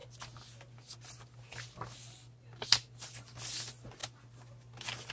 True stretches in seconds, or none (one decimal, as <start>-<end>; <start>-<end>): 0.0-5.1